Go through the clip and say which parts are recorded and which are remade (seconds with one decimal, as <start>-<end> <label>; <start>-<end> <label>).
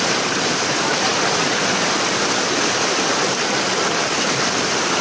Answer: 0.0-5.0 recorded